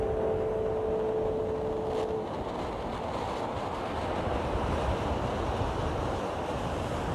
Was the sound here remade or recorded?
recorded